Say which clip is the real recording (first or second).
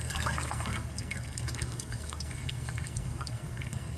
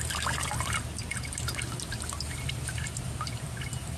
second